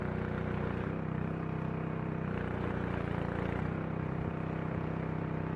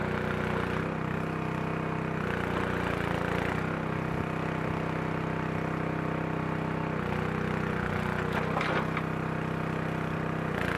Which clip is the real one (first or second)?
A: second